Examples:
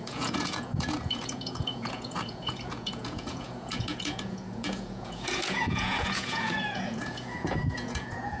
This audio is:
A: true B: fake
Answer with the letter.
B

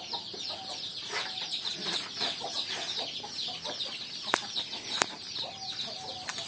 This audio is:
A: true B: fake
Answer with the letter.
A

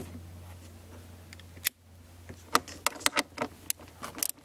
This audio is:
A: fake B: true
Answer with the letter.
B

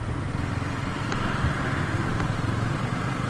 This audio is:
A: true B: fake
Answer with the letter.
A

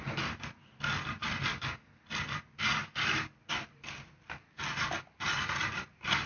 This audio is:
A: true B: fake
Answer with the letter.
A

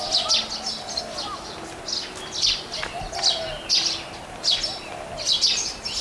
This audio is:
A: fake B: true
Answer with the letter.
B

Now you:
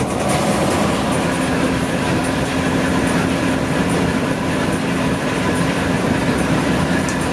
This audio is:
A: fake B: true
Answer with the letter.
A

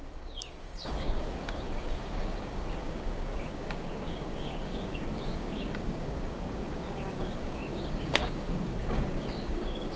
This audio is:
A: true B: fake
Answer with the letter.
B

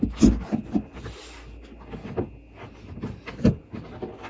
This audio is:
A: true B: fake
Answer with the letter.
A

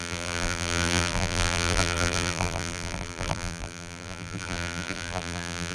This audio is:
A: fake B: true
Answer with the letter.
A